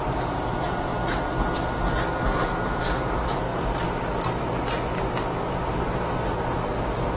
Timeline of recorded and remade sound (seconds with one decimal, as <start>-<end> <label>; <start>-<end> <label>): 0.0-0.9 remade; 0.9-2.3 recorded; 2.3-3.5 remade; 3.5-5.5 recorded; 5.5-7.2 remade